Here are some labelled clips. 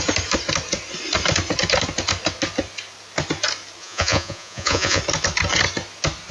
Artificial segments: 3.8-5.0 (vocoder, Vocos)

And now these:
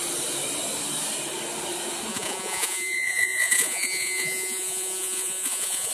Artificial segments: 2.1-5.9 (vocoder, Vocos)